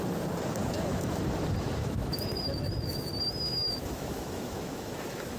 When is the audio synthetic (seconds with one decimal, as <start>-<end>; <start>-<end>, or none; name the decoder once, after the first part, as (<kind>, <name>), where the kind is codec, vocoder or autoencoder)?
0.6-1.2 (autoencoder, DAC-VAE); 1.8-3.1; 3.5-5.4